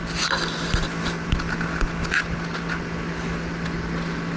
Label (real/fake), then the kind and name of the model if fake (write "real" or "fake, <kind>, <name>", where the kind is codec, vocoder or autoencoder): real